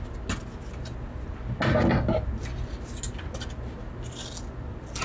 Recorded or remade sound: recorded